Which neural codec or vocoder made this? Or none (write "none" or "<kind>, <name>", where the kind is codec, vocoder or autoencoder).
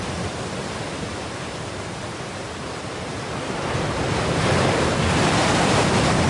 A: vocoder, BigVGAN v2